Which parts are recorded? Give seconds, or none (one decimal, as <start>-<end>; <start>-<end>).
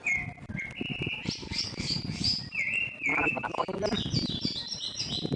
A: 0.0-1.4; 2.0-3.1; 3.8-5.4